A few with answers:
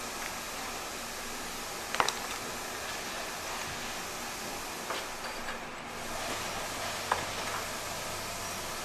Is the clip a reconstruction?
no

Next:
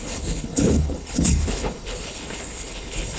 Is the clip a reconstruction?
yes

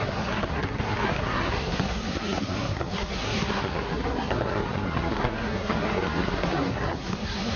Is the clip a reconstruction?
yes